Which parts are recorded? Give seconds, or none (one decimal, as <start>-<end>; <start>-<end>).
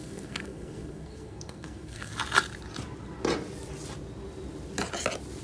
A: 2.1-5.4